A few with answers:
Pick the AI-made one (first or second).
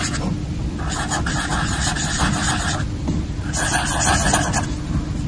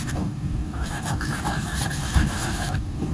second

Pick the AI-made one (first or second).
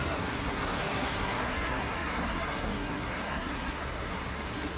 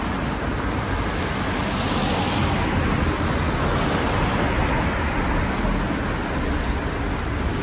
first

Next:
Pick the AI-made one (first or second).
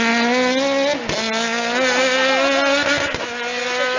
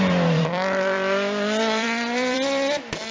second